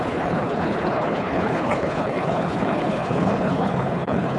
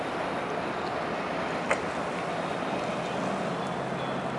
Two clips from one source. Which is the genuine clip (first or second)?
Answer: second